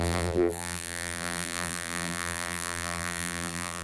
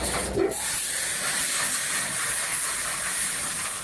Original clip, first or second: second